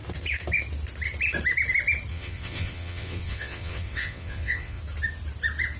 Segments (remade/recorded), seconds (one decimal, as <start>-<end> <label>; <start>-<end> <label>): 0.0-2.1 recorded; 2.1-4.8 remade; 4.8-5.8 recorded